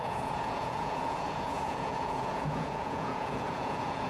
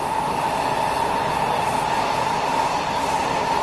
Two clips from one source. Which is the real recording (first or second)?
second